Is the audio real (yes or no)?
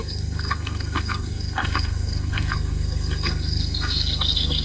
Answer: no